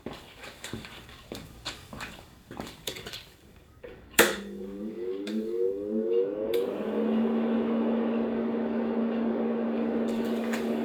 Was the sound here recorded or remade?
remade